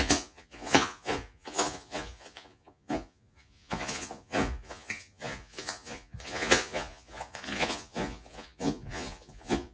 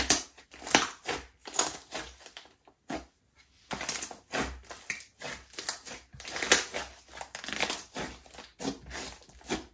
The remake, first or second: first